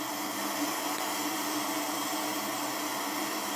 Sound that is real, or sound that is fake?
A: real